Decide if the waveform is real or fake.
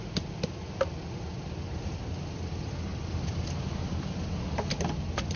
real